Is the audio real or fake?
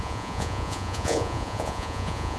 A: fake